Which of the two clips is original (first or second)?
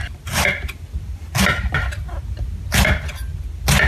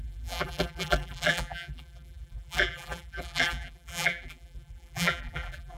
first